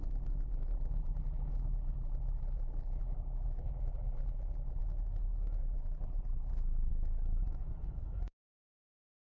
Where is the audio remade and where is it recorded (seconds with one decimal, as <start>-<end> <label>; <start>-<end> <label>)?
0.0-4.8 remade; 4.8-5.6 recorded; 5.6-6.9 remade; 6.9-9.0 recorded; 9.0-9.4 remade